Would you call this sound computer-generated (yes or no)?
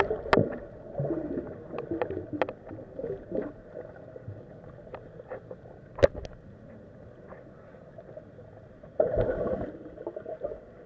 no